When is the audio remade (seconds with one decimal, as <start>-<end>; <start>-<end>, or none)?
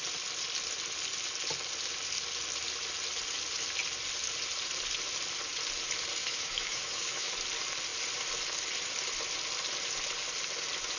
6.2-7.3